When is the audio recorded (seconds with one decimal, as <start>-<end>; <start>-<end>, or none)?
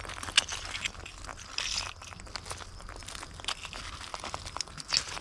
0.0-5.2